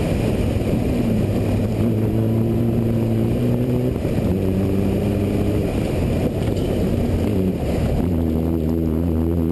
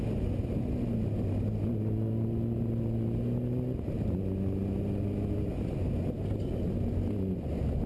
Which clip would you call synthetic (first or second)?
first